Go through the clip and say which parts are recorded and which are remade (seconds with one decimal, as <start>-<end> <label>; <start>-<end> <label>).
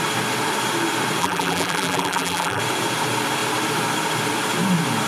0.0-1.2 recorded; 1.2-2.6 remade; 2.6-5.1 recorded